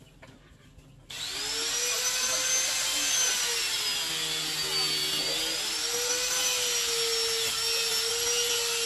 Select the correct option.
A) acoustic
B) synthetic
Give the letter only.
A